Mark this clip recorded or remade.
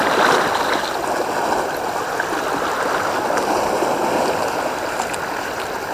recorded